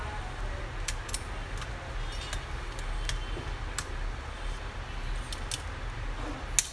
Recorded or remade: recorded